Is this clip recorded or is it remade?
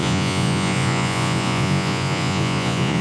remade